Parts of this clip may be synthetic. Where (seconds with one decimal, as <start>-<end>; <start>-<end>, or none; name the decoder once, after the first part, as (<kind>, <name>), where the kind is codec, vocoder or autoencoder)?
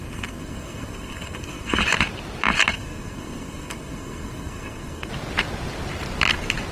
0.0-1.8 (codec, SNAC); 2.7-5.1